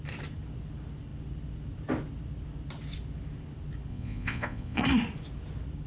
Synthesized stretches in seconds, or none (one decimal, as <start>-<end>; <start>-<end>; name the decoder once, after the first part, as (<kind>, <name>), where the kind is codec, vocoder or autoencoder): 3.9-4.8 (vocoder, Vocos)